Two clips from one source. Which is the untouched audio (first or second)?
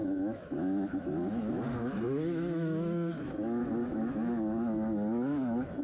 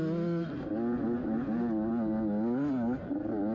second